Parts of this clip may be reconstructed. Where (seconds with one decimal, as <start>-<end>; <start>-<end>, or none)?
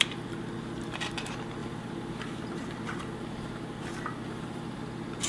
1.6-4.8